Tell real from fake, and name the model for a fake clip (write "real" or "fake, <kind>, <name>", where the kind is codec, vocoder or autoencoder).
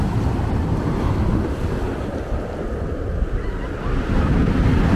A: real